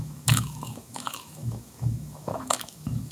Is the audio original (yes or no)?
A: no